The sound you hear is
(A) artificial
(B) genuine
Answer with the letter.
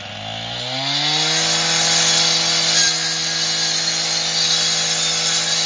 B